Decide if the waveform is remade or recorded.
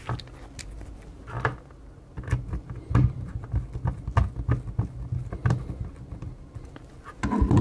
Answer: recorded